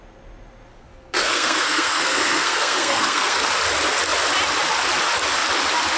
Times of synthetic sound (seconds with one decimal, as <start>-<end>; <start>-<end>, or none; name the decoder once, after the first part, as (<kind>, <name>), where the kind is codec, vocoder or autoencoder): 0.7-3.5 (codec, SNAC)